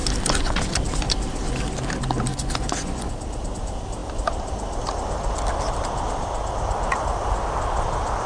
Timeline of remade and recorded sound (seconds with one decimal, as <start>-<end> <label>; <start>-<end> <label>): 0.0-2.3 recorded; 2.3-3.1 remade; 3.1-8.3 recorded